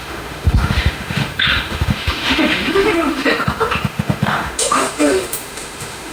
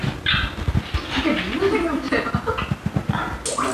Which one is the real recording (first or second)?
second